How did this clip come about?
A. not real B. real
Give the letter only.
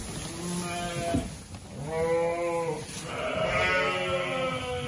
B